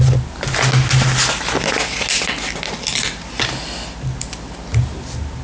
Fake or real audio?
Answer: real